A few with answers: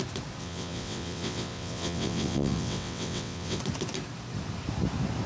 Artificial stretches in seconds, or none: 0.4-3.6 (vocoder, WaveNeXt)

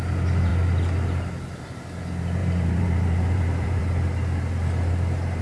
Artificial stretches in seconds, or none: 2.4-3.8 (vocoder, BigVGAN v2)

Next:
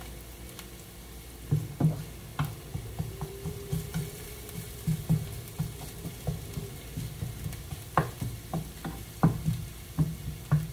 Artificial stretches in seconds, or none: 2.3-4.5 (vocoder, BigVGAN v2)

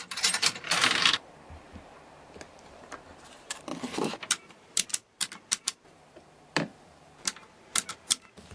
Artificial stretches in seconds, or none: 0.0-3.7 (vocoder, BigVGAN v2); 4.3-8.5

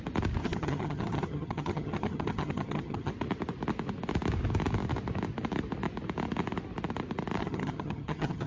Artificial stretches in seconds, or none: 0.4-3.1 (vocoder, HiFi-GAN); 7.4-8.5

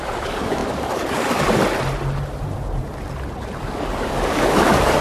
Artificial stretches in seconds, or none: 0.0-1.6 (codec, DAC); 3.6-5.0

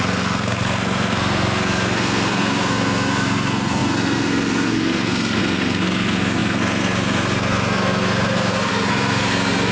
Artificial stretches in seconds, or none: 0.0-9.7 (codec, SNAC)